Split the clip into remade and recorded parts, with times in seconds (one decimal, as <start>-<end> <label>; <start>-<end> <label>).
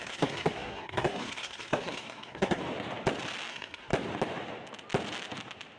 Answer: 0.0-2.6 remade; 2.6-3.5 recorded; 3.5-3.9 remade; 3.9-5.8 recorded